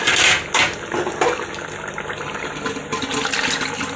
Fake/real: real